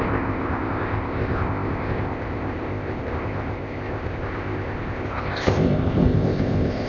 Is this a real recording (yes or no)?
no